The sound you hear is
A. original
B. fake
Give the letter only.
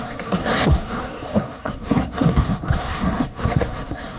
B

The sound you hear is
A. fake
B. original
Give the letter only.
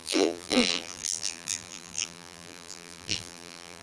A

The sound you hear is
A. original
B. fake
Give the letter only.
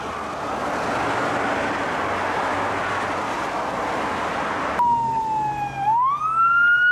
A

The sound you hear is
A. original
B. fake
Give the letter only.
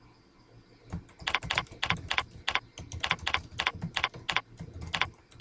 A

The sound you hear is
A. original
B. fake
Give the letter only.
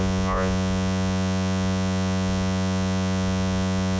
B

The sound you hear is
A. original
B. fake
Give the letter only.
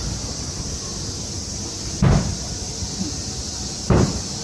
A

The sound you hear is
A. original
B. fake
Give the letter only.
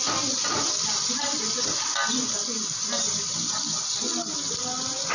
A